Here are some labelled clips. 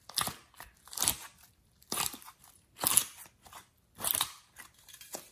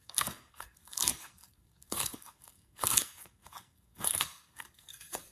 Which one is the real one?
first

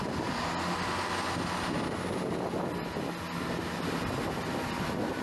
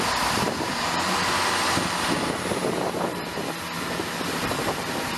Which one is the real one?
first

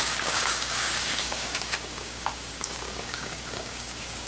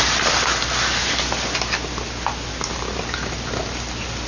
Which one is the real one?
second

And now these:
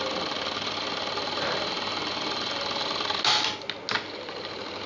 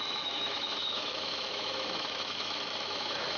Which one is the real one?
first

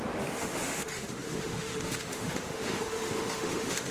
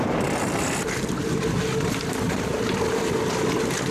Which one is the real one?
second